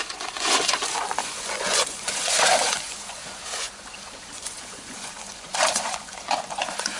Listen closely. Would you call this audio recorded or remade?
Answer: remade